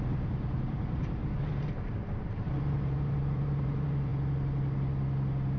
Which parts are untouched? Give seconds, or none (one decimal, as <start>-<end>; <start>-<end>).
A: 1.2-2.2; 4.1-5.6